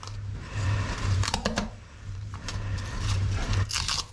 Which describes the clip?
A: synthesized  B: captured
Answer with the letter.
A